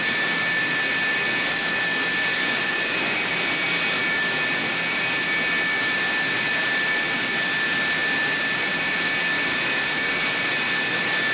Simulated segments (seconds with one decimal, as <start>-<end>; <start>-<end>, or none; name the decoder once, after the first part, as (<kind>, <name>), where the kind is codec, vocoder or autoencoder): 2.3-3.2 (vocoder, Vocos)